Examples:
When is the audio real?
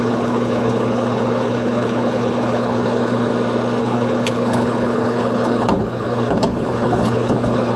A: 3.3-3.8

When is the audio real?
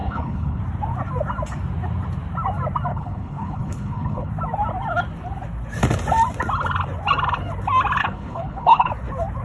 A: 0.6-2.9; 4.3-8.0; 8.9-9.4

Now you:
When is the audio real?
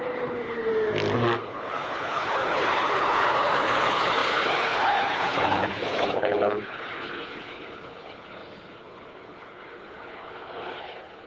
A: 0.7-1.4